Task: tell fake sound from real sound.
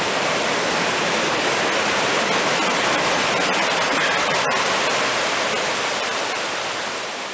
real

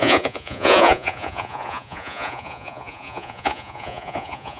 fake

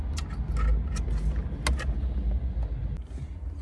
real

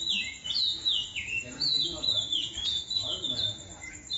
fake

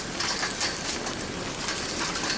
real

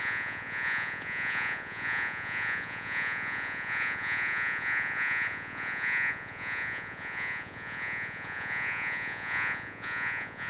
fake